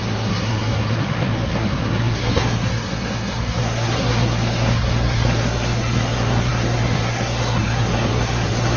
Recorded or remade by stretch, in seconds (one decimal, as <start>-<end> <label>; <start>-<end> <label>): 0.0-8.8 remade